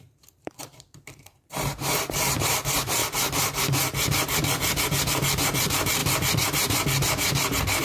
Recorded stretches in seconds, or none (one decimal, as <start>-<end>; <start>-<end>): 3.0-3.6; 6.0-7.8